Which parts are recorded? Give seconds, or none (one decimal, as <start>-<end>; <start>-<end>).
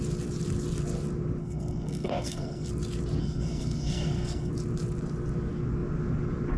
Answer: 0.0-1.4; 2.7-3.2; 4.5-6.6